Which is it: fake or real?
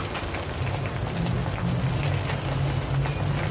real